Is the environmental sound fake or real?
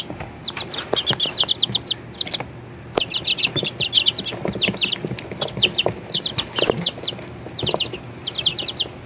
real